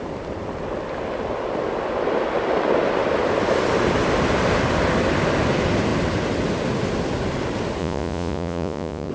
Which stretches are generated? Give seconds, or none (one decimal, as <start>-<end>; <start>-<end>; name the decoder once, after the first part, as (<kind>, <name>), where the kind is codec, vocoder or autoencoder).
7.8-9.1 (vocoder, Vocos)

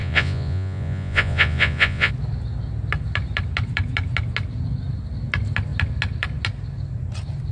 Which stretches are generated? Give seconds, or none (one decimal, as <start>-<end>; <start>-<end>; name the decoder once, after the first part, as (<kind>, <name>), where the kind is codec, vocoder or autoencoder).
0.0-2.1 (vocoder, Vocos)

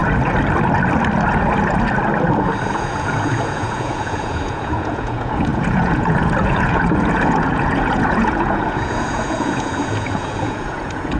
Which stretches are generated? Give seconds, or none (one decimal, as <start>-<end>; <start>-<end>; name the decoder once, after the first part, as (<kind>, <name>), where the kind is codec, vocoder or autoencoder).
2.7-11.2 (vocoder, Vocos)

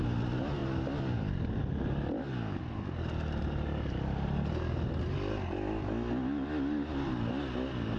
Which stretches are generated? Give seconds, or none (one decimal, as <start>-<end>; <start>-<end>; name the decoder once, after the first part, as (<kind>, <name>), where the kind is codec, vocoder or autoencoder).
none